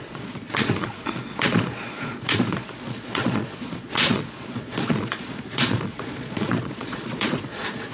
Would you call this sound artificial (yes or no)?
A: yes